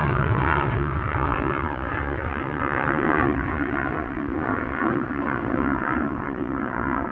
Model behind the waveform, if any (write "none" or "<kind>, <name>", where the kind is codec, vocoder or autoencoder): vocoder, WaveNeXt